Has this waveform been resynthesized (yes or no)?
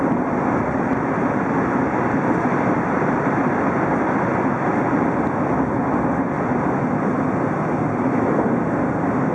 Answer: no